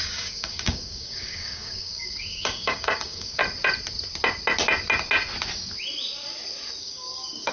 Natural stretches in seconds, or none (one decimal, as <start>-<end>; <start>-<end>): 3.4-6.8